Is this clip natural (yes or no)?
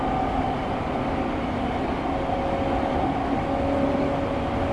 yes